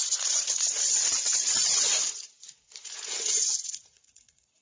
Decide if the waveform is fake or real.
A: fake